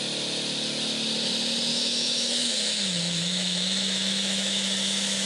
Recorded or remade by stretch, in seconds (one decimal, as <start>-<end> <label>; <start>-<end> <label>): 0.0-1.7 recorded; 1.7-5.3 remade